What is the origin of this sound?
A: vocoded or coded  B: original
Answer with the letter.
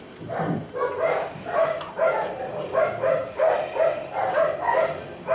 B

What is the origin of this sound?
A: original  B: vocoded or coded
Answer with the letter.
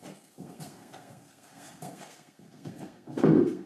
B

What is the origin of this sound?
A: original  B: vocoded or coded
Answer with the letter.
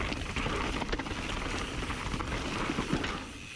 A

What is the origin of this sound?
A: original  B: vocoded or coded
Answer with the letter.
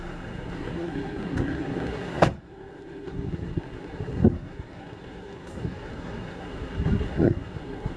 B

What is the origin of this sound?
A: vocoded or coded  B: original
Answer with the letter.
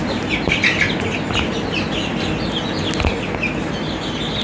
B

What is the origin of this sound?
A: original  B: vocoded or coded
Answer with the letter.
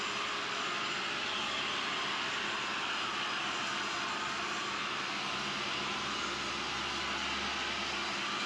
A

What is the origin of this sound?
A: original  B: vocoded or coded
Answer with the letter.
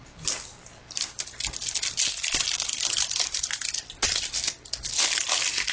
A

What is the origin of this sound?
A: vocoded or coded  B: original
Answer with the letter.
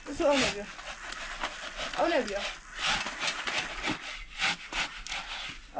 B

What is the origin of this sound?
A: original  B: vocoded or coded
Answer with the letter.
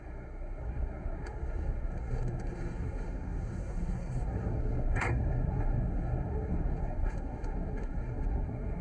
B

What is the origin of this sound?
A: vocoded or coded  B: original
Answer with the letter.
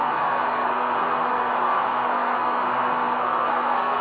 A